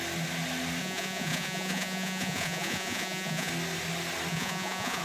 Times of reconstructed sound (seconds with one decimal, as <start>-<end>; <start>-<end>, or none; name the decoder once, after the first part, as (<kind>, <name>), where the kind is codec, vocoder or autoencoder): 0.8-3.5 (vocoder, Vocos); 4.3-5.0